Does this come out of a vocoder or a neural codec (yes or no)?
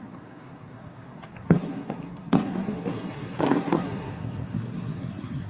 yes